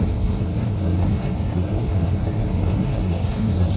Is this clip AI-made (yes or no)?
yes